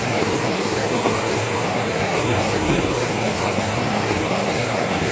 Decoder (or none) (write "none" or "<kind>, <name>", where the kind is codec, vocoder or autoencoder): codec, SNAC